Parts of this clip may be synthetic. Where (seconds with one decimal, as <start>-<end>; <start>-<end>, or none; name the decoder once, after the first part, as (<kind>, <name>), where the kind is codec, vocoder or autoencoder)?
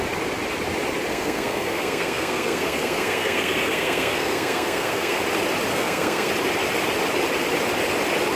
1.1-5.2 (codec, SNAC); 5.7-6.3